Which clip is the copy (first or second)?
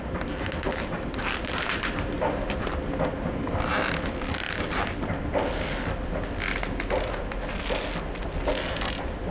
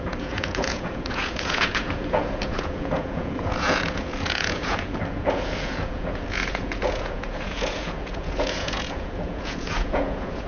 second